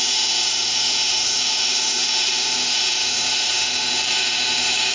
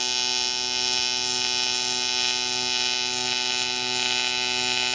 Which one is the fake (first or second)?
first